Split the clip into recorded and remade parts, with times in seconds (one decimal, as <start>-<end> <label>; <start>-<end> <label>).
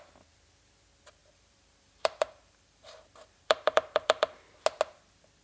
0.0-1.2 recorded; 1.2-4.4 remade; 4.4-5.4 recorded